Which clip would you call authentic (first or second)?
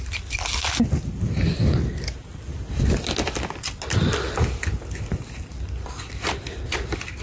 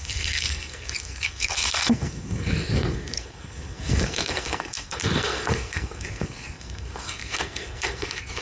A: first